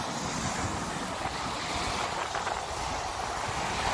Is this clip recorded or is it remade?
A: recorded